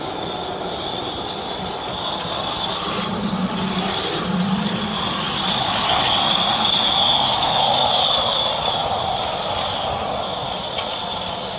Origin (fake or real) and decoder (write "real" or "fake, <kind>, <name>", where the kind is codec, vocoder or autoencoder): real